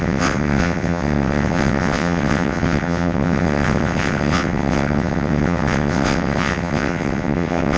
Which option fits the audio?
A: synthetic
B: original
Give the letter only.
A